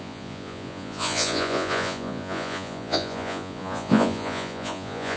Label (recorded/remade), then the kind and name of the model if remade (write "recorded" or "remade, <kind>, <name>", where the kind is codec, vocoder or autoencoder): remade, vocoder, Vocos